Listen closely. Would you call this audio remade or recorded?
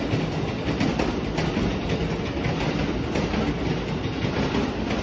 recorded